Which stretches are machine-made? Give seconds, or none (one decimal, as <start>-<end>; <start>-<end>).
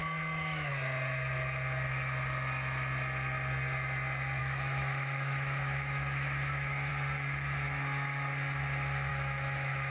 0.0-0.7; 4.4-6.9; 9.1-9.9